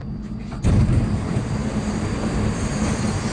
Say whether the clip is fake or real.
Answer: real